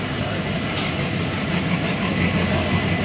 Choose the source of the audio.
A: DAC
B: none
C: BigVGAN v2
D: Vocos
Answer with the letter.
B